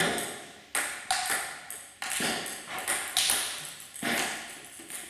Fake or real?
real